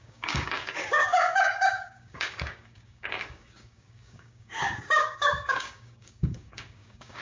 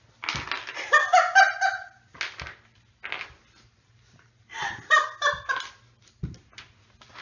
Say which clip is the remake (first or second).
first